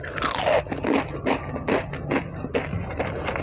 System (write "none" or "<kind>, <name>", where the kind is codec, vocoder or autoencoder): none